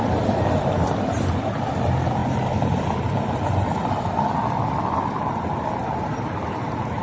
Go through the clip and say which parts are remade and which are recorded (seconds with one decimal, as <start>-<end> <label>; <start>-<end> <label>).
0.0-7.0 recorded